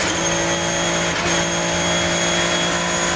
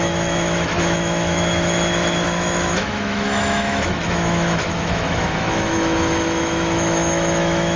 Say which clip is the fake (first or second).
second